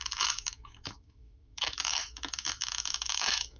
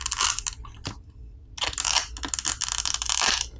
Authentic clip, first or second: second